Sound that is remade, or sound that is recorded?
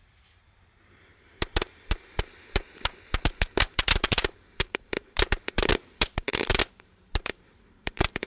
remade